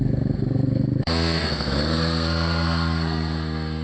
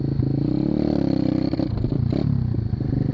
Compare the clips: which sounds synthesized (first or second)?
first